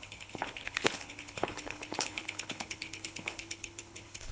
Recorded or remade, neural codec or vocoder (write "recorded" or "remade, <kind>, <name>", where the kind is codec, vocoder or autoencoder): remade, codec, HILCodec